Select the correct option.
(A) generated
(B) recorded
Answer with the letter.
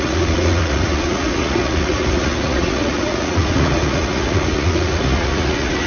A